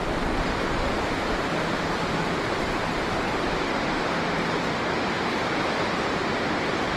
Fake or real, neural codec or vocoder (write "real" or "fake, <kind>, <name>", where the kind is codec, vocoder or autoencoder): fake, vocoder, BigVGAN v2